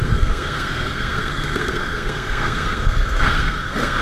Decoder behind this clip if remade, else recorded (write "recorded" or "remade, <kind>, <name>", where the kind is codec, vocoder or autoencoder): remade, codec, SNAC